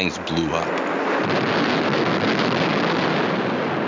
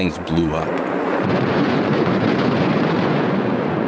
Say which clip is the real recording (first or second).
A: first